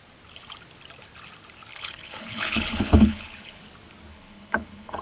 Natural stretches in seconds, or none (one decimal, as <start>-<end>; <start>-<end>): 0.0-1.7; 3.6-4.1